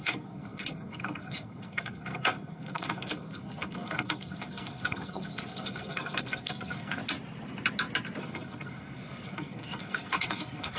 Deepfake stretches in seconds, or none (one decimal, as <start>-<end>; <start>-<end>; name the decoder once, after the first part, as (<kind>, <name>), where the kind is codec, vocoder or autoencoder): 0.0-7.0 (codec, SNAC); 8.2-10.8